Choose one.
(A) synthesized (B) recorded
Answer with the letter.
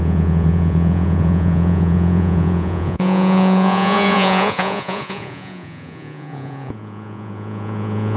A